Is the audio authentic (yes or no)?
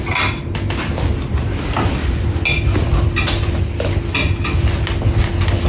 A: yes